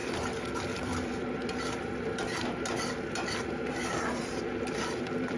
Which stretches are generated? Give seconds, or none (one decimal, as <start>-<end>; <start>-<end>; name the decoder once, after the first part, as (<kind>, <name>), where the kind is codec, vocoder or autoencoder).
0.5-5.4 (vocoder, BigVGAN v2)